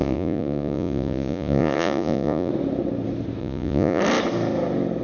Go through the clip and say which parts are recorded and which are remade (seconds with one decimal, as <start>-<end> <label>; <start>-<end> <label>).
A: 0.0-2.5 remade; 2.5-3.4 recorded; 3.4-4.0 remade; 4.0-5.0 recorded